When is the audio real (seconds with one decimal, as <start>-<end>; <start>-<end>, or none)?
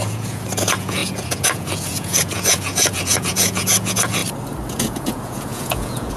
4.2-4.7